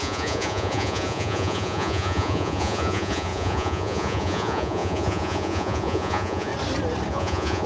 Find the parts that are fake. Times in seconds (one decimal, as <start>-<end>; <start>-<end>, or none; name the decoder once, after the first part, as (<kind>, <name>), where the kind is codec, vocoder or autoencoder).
0.0-6.5 (vocoder, Vocos); 7.1-7.7